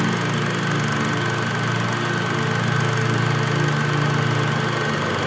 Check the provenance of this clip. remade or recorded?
recorded